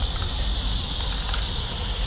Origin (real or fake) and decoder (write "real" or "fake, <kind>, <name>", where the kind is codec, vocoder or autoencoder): fake, vocoder, BigVGAN v2